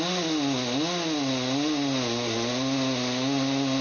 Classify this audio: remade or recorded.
recorded